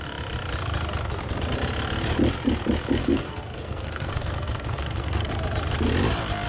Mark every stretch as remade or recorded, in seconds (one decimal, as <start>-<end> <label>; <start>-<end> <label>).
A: 0.0-3.0 recorded; 3.0-5.3 remade; 5.3-6.5 recorded